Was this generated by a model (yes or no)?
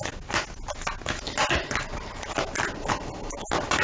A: no